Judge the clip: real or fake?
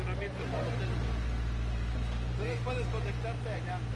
real